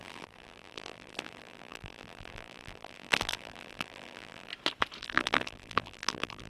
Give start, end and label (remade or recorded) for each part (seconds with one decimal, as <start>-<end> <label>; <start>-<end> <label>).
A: 0.0-4.5 remade; 4.5-5.0 recorded; 5.0-6.5 remade